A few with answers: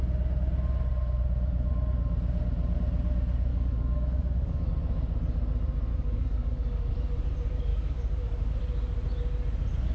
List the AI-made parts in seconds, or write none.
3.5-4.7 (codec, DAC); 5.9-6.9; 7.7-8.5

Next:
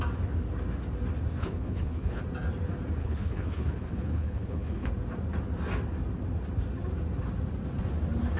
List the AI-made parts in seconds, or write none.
1.4-2.2 (codec, HILCodec); 3.0-4.9

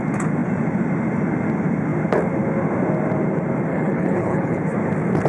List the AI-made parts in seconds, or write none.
3.7-4.6 (codec, HILCodec)

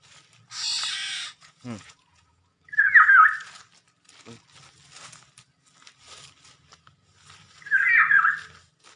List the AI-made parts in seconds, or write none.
0.9-2.6 (vocoder, Vocos)

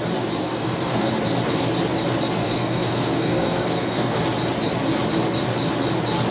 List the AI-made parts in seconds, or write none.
0.4-1.1 (codec, SNAC); 2.4-4.2

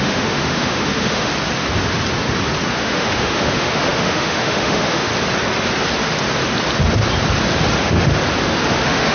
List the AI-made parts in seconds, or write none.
0.0-1.3 (autoencoder, DAC-VAE); 2.7-5.1; 7.8-8.2; 8.7-9.1

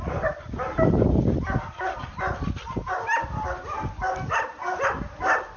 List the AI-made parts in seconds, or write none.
none

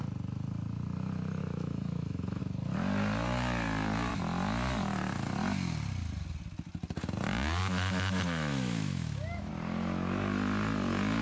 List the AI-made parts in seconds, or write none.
1.4-2.4 (autoencoder, DAC-VAE); 7.6-9.5